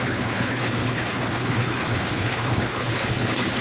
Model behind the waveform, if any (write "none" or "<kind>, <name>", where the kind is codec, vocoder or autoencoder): codec, HILCodec